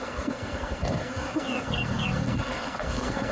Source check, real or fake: fake